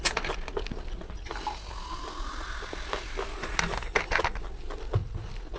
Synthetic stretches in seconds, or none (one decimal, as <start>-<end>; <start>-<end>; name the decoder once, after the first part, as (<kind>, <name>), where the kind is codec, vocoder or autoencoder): none